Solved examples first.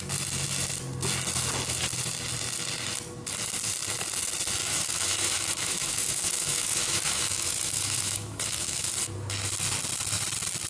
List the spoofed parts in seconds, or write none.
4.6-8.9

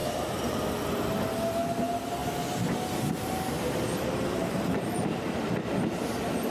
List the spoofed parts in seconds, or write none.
0.0-0.7; 3.9-5.5